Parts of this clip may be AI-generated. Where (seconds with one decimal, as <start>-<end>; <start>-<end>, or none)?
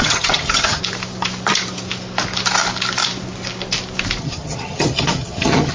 0.0-0.8; 4.2-5.7